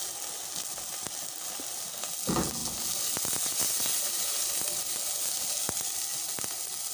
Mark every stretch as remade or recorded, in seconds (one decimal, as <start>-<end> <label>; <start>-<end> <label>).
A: 0.0-6.9 recorded